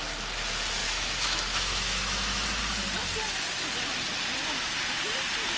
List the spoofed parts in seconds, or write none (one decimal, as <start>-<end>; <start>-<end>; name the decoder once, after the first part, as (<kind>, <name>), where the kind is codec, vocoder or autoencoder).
0.8-2.6 (autoencoder, DAC-VAE)